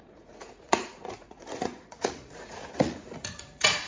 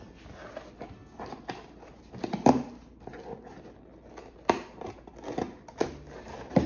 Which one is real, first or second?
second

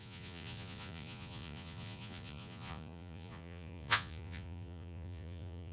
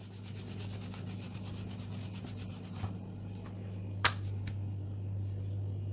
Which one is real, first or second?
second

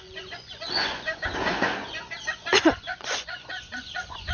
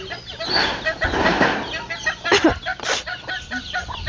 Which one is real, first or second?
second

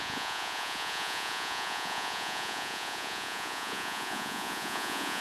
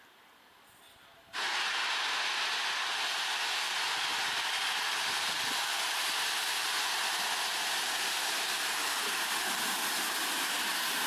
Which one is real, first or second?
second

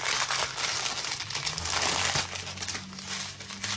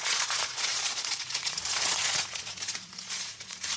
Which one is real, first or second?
first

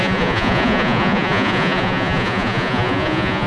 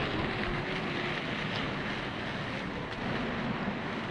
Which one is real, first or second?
second